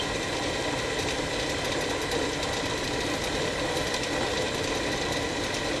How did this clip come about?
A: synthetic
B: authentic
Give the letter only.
B